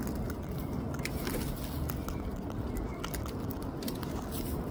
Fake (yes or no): no